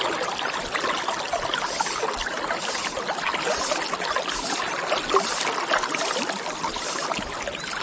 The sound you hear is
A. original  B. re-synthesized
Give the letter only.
A